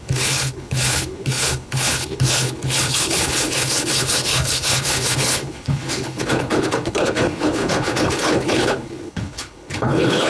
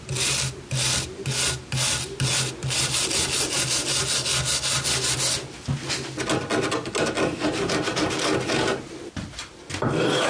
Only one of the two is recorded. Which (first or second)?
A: second